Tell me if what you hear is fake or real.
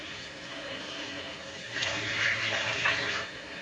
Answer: fake